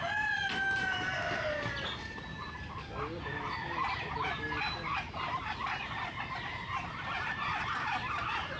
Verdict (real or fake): real